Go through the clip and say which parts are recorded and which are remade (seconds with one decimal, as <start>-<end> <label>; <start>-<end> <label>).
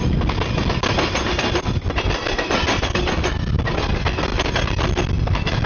0.0-5.7 recorded